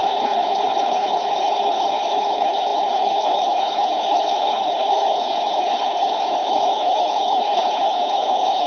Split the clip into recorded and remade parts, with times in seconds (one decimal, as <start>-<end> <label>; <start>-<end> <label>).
0.0-8.7 remade